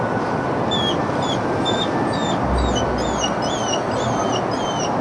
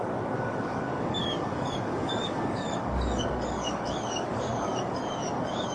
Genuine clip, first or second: first